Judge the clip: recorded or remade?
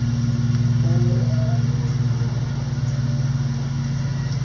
recorded